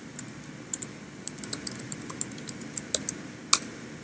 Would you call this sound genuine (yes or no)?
yes